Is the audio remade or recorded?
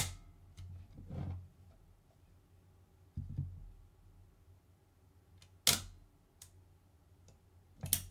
recorded